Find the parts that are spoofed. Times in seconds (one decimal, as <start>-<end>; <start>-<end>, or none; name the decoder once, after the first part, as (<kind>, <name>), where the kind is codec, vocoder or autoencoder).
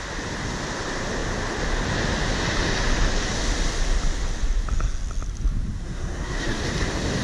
5.8-6.6 (codec, SNAC)